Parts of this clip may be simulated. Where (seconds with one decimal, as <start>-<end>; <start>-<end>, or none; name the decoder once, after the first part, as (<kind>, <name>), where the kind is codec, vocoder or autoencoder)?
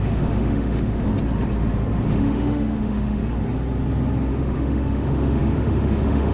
0.0-1.1 (autoencoder, DAC-VAE); 2.1-3.2; 4.3-6.3